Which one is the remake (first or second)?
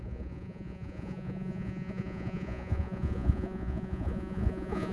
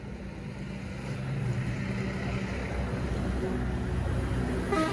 first